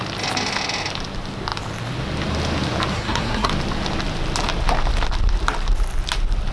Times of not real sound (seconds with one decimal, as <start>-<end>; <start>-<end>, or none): 2.9-3.5